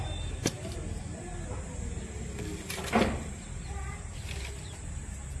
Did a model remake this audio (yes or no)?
no